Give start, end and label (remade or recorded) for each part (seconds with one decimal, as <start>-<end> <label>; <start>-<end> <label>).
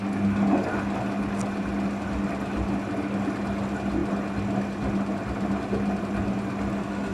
0.0-7.1 recorded